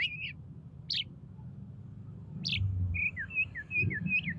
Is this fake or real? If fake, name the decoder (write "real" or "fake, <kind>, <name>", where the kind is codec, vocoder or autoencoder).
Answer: real